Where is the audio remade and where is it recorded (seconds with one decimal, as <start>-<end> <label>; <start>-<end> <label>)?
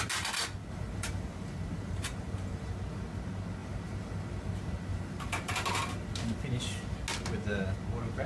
0.0-0.6 recorded; 0.6-2.7 remade; 2.7-3.6 recorded; 3.6-4.5 remade; 4.5-4.9 recorded; 4.9-5.5 remade; 5.5-8.3 recorded